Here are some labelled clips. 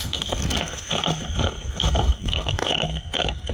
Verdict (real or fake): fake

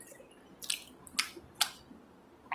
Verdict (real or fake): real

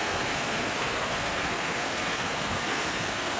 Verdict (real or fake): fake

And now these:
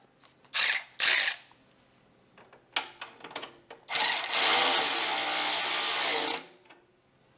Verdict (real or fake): real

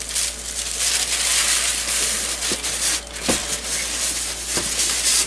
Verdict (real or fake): real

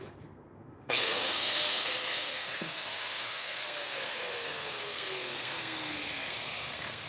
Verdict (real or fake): fake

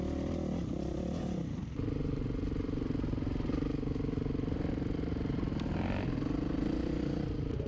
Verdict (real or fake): real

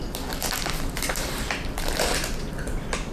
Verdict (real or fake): real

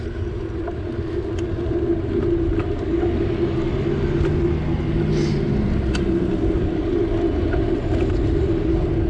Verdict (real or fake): real